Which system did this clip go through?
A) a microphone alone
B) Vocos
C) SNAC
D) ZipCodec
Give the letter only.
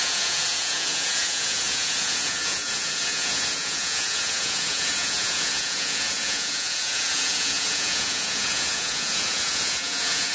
B